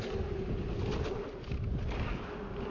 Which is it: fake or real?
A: real